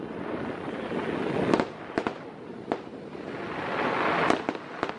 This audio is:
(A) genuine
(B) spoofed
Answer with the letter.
A